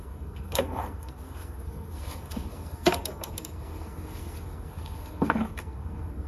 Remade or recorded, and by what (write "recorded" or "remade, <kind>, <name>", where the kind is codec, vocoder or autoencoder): remade, codec, SNAC